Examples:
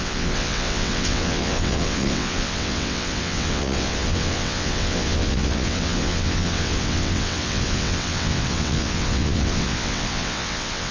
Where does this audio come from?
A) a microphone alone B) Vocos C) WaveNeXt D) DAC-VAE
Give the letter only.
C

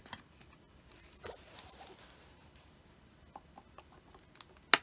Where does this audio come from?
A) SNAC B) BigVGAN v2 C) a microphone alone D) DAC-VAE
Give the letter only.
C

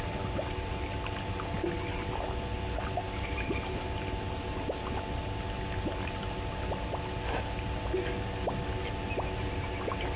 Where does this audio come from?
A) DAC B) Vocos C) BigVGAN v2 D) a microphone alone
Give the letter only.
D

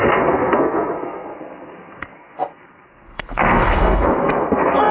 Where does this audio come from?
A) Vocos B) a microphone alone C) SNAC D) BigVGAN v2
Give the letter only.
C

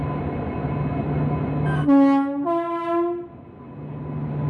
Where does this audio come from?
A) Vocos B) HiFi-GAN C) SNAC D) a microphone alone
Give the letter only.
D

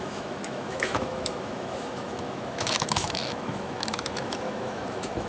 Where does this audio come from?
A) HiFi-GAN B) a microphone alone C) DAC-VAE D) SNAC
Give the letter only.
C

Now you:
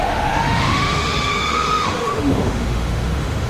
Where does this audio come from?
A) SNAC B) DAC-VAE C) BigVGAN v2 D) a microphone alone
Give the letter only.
B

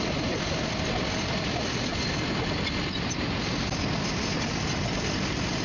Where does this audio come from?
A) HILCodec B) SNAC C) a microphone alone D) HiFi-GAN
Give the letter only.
C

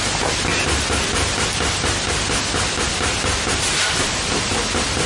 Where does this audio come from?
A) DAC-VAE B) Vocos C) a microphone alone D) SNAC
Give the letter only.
C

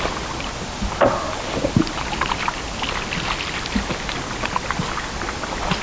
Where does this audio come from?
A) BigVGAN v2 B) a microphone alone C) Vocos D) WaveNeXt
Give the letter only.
B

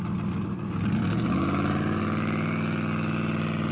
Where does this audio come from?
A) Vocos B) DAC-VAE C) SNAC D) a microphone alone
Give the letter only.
D